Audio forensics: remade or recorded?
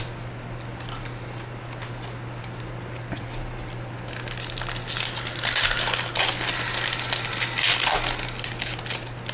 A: recorded